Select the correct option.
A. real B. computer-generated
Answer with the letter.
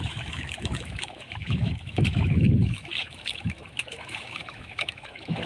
B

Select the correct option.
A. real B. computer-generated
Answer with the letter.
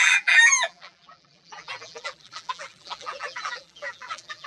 B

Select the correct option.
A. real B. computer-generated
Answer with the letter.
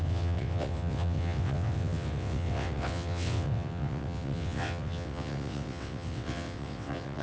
B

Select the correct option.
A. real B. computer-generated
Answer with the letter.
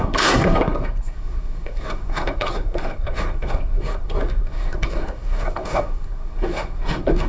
B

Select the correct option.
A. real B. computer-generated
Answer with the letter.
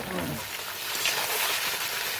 A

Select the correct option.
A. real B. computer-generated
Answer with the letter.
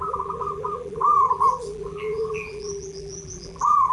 B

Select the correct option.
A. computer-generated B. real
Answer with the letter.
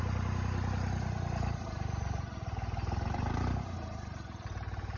A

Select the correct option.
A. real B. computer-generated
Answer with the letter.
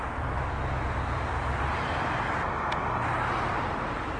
A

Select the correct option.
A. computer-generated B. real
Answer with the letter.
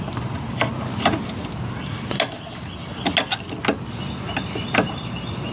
B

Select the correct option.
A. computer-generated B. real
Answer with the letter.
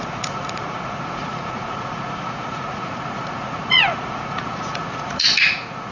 A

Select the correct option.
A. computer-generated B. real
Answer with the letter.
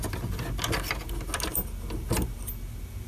B